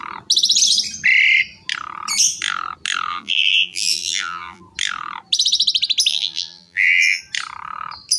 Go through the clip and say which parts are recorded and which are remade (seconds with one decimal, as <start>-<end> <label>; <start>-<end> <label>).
0.0-3.1 recorded; 3.1-4.6 remade; 4.6-6.1 recorded; 6.1-7.2 remade; 7.2-8.2 recorded